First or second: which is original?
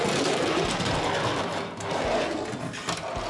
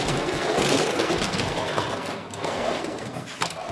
first